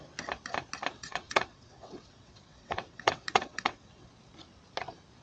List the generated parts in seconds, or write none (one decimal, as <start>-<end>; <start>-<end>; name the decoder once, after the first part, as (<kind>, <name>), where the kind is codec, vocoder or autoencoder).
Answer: 1.0-4.1 (vocoder, WaveNeXt)